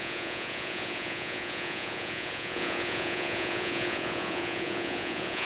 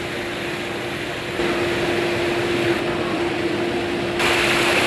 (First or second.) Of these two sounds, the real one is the second